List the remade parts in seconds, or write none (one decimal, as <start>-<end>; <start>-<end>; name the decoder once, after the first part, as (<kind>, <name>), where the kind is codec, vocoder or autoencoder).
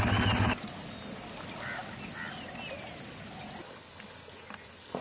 none